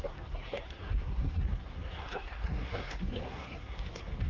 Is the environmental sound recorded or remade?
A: remade